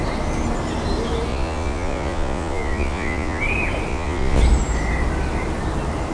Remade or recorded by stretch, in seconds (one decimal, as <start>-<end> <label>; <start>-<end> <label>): 0.0-1.3 recorded; 1.3-3.4 remade; 3.4-3.9 recorded; 3.9-4.4 remade; 4.4-6.1 recorded